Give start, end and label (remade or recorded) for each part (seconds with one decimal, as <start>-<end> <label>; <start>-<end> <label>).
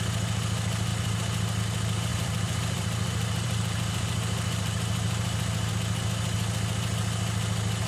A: 0.0-2.1 recorded; 2.1-5.7 remade; 5.7-7.9 recorded